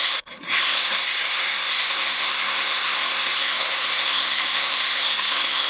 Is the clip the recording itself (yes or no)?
no